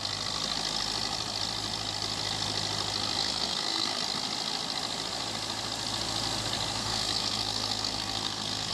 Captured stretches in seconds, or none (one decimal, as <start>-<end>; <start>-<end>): 0.0-3.2; 4.0-6.8